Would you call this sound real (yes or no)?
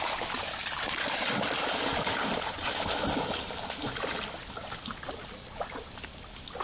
yes